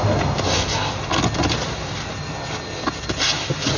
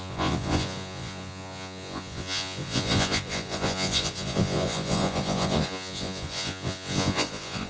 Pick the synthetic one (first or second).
second